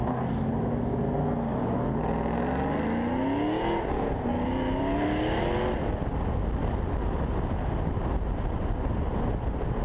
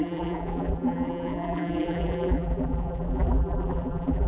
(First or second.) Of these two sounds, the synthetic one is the second